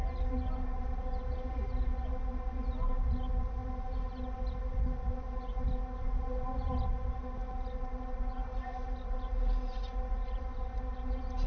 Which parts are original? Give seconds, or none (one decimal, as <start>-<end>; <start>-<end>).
0.0-11.5